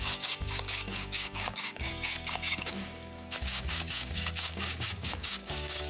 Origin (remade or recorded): remade